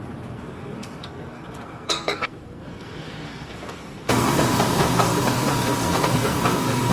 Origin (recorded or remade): remade